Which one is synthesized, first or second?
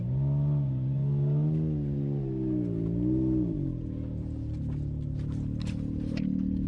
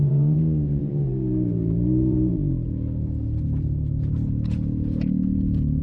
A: second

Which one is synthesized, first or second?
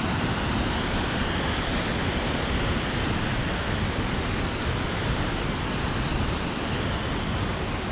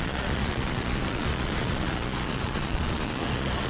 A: second